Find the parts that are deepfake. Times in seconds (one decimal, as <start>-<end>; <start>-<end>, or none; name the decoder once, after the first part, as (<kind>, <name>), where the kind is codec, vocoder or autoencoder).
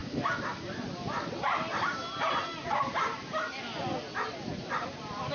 1.7-3.1 (vocoder, BigVGAN v2); 4.5-5.3